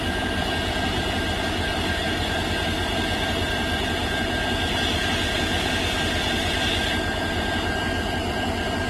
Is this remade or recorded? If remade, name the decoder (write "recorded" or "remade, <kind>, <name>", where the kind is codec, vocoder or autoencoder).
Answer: recorded